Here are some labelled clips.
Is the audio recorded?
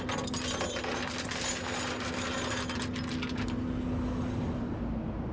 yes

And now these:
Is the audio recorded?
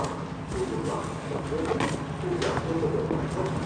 yes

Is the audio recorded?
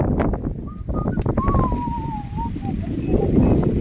yes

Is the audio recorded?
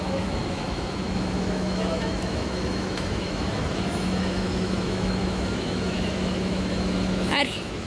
no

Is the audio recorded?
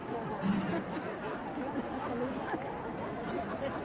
yes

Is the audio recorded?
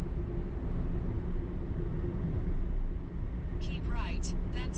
yes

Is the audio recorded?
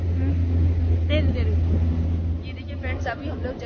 yes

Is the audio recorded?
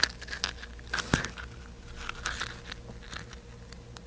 yes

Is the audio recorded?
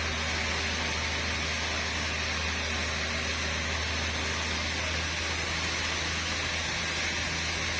yes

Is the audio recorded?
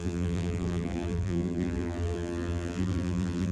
no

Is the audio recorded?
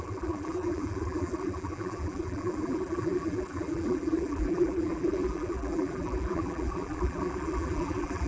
no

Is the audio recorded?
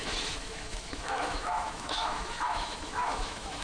no